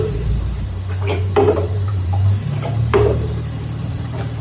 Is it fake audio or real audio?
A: fake